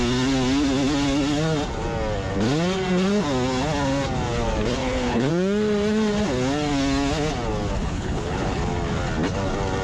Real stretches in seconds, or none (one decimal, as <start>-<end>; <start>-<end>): 0.0-4.8; 5.3-7.8; 8.6-9.8